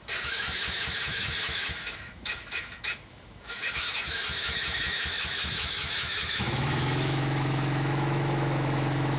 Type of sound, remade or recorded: remade